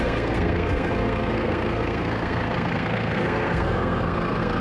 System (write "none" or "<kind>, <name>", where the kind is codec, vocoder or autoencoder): codec, SNAC